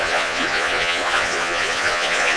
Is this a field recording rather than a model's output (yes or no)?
no